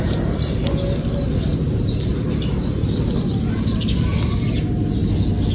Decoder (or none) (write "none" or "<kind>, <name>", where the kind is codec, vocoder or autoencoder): none